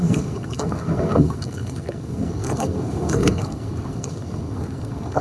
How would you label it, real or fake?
fake